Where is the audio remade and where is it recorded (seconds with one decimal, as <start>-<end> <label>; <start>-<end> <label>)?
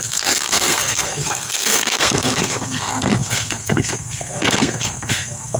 0.0-5.6 remade